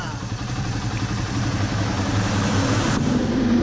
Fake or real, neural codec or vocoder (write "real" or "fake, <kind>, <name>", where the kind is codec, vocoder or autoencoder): fake, vocoder, BigVGAN v2